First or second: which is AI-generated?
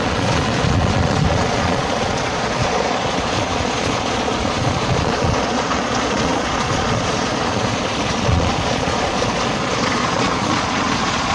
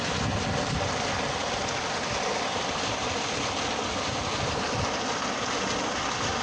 first